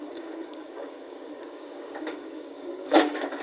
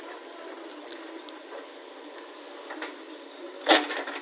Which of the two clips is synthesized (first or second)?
first